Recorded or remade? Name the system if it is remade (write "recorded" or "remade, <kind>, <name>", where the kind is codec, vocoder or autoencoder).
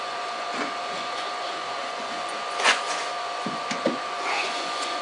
remade, vocoder, Vocos